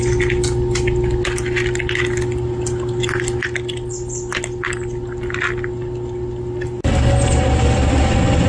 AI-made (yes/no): no